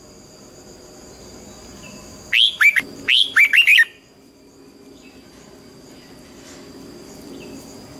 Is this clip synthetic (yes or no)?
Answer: no